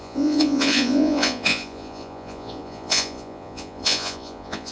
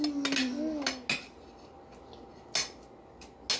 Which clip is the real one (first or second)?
second